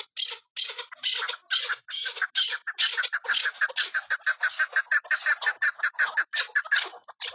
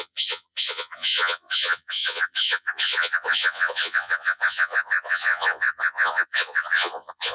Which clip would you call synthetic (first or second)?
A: second